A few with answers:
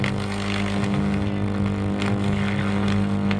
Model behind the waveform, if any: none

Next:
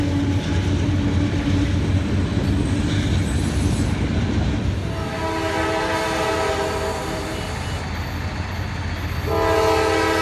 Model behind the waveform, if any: none